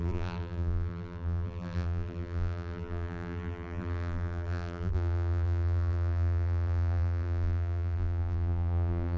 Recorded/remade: remade